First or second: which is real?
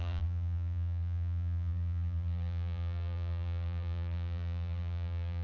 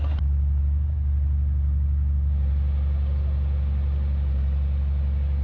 second